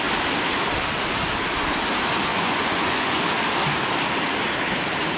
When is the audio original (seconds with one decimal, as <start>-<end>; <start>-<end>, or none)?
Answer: 0.0-2.3; 3.2-5.2